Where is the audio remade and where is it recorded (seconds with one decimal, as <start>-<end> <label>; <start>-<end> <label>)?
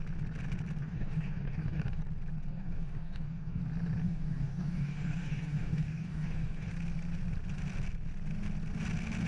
0.0-0.8 recorded; 0.8-2.0 remade; 2.0-2.5 recorded; 2.5-3.6 remade; 3.6-4.0 recorded; 4.0-6.7 remade; 6.7-9.3 recorded